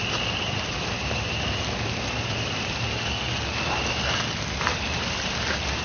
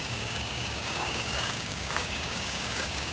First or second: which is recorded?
first